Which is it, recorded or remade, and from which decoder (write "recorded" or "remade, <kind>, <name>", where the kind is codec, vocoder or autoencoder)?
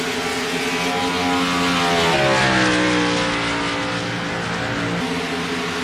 recorded